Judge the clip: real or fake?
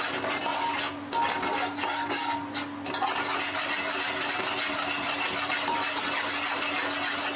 real